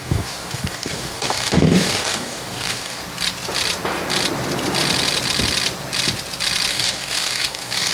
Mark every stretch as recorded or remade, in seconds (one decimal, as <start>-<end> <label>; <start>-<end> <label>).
0.0-3.0 remade; 3.0-6.7 recorded; 6.7-7.9 remade